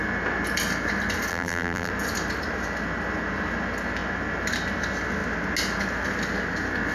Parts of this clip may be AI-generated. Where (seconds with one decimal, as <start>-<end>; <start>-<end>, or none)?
1.3-1.9